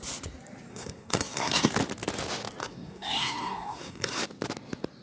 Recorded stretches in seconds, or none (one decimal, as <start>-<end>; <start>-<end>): 0.0-0.7; 1.7-2.6; 4.2-5.0